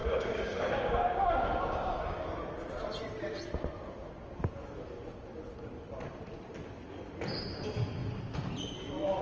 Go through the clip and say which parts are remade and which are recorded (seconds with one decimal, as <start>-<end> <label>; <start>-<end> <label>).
0.0-2.3 remade; 2.3-9.2 recorded